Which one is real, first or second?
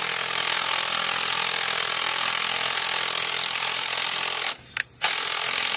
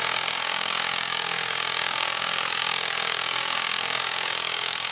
first